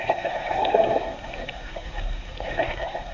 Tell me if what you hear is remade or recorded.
remade